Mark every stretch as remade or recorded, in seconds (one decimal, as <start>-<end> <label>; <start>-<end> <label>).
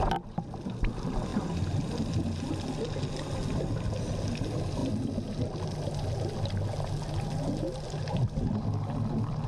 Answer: 0.0-9.5 recorded